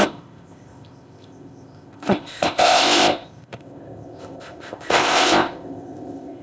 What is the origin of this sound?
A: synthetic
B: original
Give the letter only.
A